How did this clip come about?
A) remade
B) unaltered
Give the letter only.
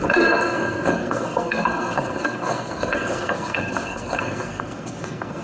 A